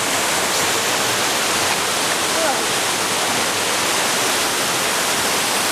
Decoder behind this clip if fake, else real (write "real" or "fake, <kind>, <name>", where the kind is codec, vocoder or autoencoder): real